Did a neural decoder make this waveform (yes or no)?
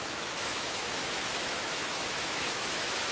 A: yes